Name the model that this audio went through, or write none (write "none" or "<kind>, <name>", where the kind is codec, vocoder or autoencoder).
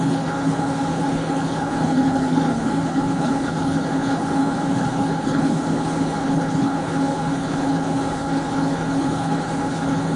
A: codec, HILCodec